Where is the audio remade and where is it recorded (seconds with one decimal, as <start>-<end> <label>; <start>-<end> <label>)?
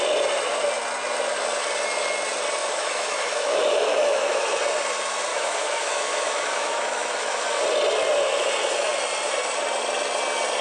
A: 0.0-2.6 recorded; 2.6-4.6 remade; 4.6-5.3 recorded; 5.3-7.6 remade; 7.6-10.6 recorded